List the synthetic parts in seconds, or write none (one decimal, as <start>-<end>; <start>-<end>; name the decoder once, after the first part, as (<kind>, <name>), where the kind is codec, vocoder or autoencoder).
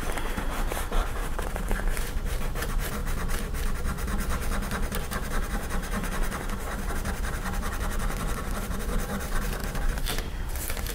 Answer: 0.0-3.0 (vocoder, BigVGAN v2); 6.9-10.9